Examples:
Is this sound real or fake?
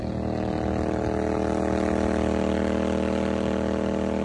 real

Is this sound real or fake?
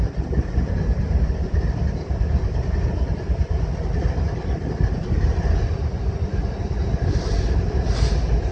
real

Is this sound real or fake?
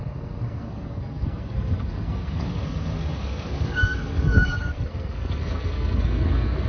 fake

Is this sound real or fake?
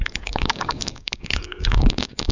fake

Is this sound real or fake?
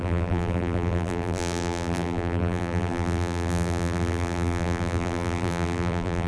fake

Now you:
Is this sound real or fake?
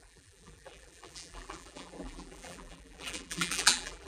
fake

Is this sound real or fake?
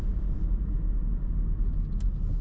real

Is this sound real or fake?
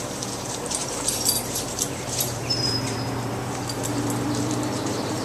fake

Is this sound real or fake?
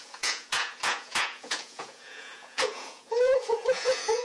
fake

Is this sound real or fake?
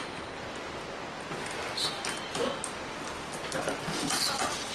real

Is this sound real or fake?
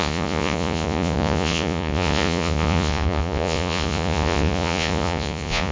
fake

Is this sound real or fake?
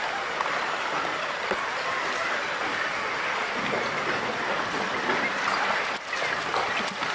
real